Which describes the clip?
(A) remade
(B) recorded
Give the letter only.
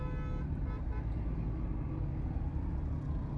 B